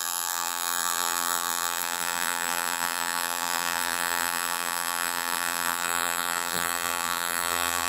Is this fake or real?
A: fake